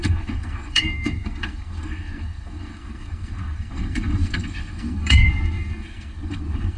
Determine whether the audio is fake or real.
fake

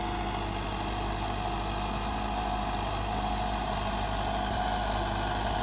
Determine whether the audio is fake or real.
real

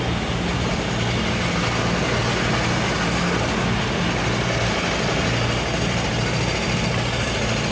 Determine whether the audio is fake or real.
real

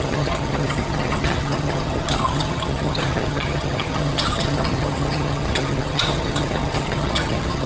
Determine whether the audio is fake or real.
fake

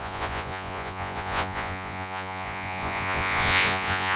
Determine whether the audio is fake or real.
fake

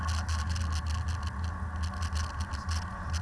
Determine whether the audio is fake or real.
real